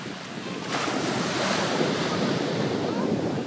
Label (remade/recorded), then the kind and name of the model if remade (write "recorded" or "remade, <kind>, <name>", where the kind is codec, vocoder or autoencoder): recorded